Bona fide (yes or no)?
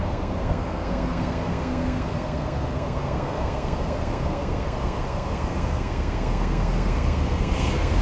no